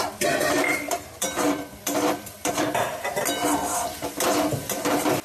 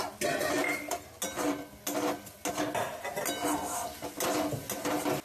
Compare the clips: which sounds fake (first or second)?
first